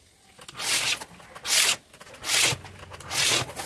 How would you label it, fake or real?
real